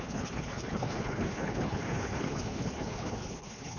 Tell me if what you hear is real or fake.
fake